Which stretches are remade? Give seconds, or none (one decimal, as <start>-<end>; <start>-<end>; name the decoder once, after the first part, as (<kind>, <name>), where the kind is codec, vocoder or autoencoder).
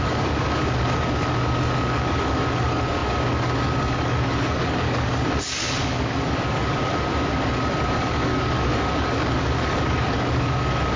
0.0-6.9 (codec, DAC); 7.7-11.0